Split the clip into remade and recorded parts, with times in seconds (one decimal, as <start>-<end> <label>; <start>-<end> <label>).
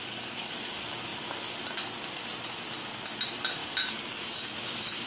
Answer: 0.0-5.1 recorded